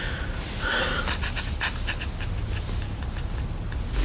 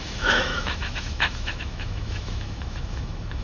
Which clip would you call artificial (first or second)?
second